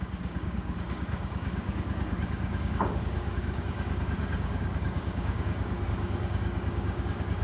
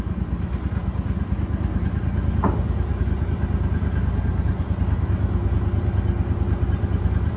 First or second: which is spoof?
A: first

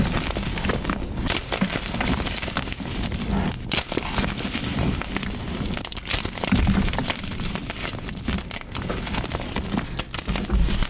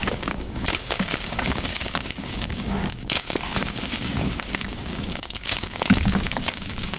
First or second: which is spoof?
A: second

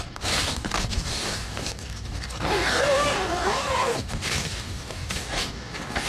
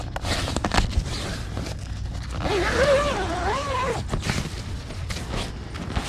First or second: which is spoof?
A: first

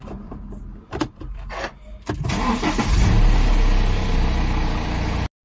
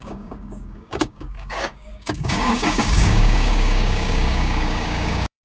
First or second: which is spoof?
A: second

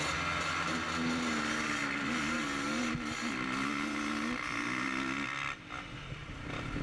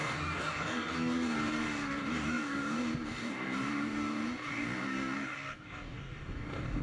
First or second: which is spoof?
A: second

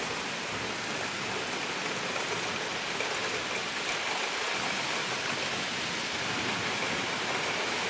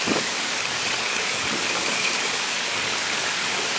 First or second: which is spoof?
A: second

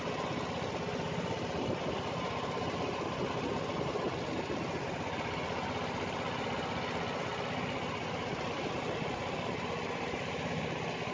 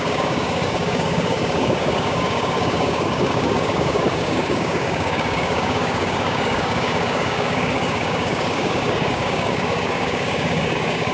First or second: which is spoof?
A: second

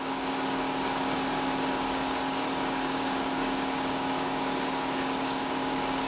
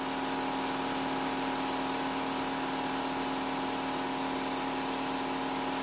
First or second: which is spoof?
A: first